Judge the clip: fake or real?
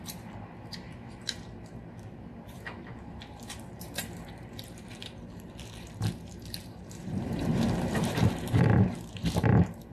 fake